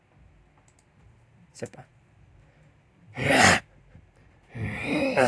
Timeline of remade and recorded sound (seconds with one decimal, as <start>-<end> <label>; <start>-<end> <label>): 0.0-5.3 recorded